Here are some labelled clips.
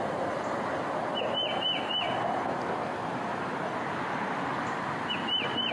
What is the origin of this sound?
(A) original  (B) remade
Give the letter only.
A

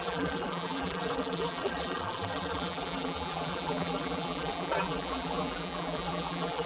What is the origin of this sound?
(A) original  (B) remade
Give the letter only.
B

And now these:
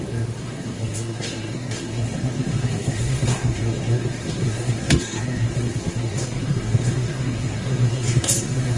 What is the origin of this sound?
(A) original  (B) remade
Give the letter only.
B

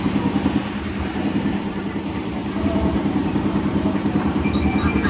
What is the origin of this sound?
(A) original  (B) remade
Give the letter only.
B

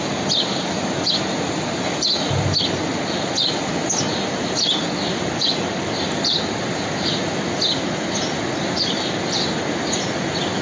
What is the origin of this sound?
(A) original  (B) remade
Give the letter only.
A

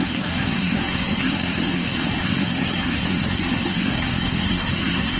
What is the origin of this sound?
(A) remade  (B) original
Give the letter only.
A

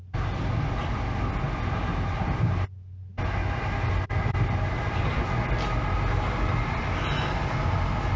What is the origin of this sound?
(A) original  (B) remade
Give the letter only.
A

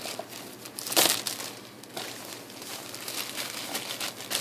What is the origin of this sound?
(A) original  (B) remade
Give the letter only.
A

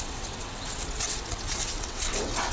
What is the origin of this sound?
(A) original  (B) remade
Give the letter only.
B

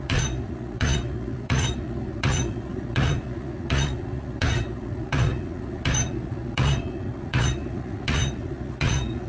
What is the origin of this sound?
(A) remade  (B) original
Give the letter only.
A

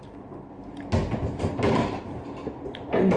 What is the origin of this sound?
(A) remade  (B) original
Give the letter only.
B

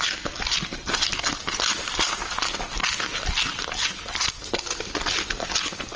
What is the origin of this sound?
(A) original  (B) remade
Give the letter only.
A